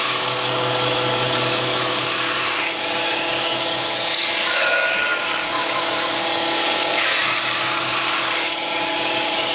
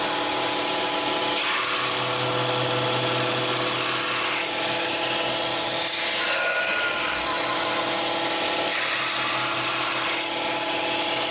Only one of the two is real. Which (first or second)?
second